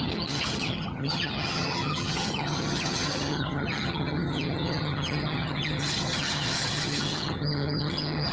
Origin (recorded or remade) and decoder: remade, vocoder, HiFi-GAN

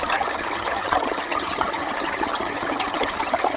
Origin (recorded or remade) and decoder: remade, vocoder, HiFi-GAN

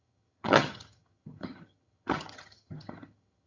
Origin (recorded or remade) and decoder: remade, vocoder, HiFi-GAN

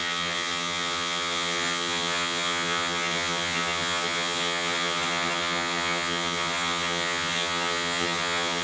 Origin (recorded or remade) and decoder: remade, vocoder, HiFi-GAN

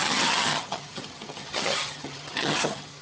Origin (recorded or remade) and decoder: remade, vocoder, HiFi-GAN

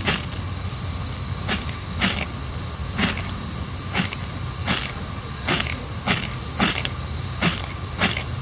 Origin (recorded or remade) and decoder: recorded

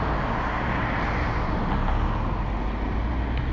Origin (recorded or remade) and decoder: recorded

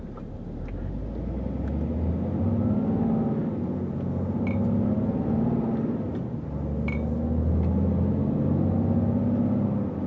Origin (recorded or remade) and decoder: recorded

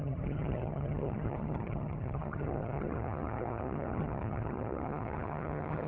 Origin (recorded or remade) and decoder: remade, vocoder, HiFi-GAN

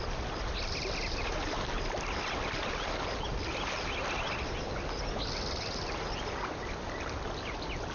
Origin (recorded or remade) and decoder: recorded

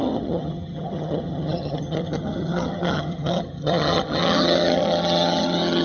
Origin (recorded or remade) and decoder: remade, vocoder, HiFi-GAN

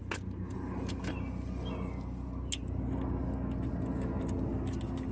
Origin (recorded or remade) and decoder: recorded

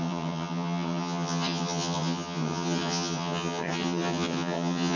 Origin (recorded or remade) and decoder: remade, vocoder, HiFi-GAN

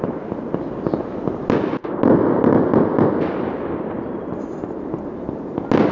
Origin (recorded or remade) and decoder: recorded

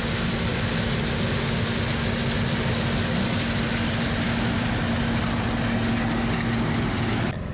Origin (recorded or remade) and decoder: recorded